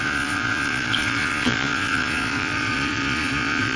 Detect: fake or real fake